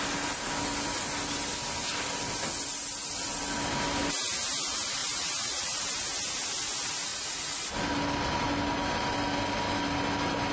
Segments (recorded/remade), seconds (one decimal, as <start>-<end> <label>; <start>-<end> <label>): 0.0-5.0 recorded; 5.0-5.8 remade; 5.8-7.1 recorded; 7.1-7.7 remade; 7.7-10.5 recorded